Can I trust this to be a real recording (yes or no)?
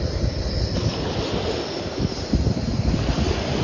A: yes